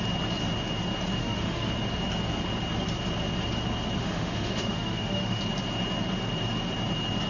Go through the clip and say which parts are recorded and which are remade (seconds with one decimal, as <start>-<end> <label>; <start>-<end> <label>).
0.0-1.2 recorded; 1.2-1.7 remade; 1.7-4.0 recorded; 4.0-5.4 remade; 5.4-7.3 recorded